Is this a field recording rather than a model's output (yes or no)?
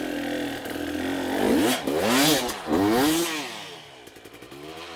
yes